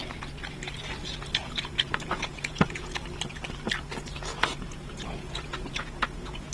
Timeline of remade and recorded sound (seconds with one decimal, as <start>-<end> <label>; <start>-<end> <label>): 0.0-1.4 recorded; 1.4-3.0 remade; 3.0-4.3 recorded; 4.3-6.5 remade